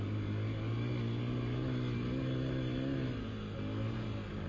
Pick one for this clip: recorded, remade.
recorded